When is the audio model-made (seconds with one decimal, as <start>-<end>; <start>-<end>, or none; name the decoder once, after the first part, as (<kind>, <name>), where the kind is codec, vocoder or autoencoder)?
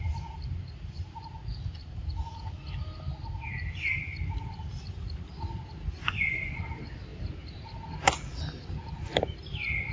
6.0-6.6 (vocoder, Vocos)